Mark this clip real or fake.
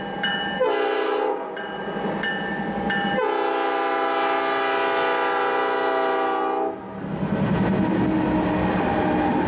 real